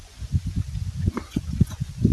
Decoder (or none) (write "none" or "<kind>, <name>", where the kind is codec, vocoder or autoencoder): vocoder, Vocos